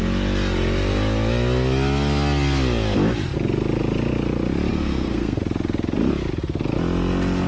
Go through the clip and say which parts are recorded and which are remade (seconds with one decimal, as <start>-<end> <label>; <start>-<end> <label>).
0.0-4.7 recorded; 4.7-5.4 remade; 5.4-7.5 recorded